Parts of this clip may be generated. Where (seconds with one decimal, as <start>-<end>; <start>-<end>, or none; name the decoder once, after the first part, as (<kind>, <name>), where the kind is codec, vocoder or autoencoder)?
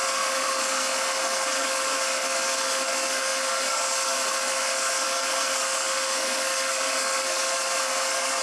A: 0.0-8.4 (codec, SNAC)